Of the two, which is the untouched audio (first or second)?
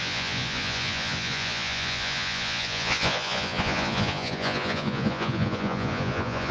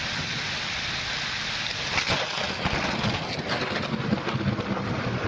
second